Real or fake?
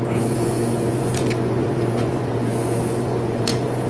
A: fake